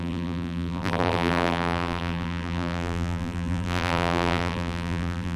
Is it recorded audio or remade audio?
remade